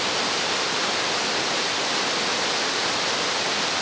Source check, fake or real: real